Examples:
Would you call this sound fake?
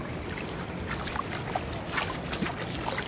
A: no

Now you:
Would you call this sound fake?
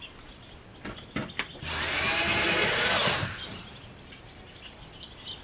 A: no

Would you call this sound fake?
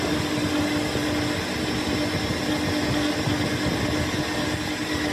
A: no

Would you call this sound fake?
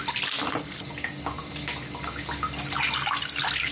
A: no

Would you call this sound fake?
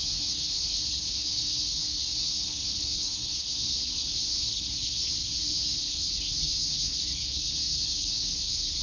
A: yes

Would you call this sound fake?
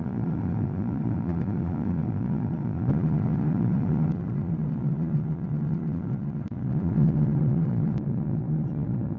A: yes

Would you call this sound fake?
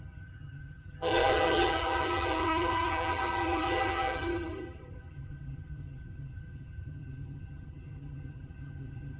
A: yes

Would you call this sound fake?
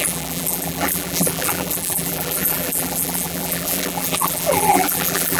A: yes